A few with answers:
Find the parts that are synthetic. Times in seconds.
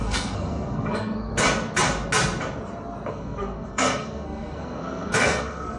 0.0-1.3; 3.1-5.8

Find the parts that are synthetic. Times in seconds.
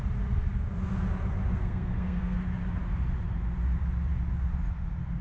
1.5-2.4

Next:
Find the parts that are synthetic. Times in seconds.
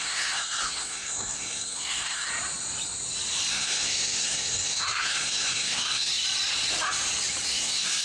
0.0-2.3; 3.5-6.1; 7.5-8.0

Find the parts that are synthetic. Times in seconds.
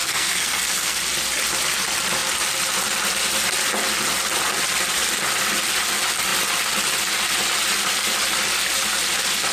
0.0-1.0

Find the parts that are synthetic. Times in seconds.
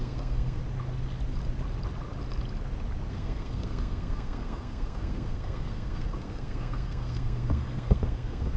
0.0-0.6; 3.1-8.6